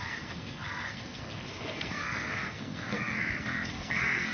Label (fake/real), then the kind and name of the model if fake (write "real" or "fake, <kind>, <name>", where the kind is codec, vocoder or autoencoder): fake, codec, SNAC